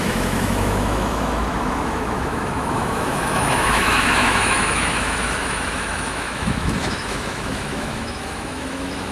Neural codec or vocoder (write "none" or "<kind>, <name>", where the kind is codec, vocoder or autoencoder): autoencoder, DAC-VAE